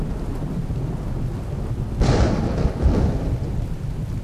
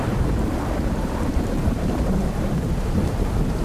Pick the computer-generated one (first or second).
second